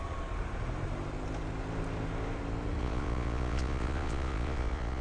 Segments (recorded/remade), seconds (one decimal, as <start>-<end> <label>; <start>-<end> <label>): 0.0-2.8 recorded; 2.8-5.0 remade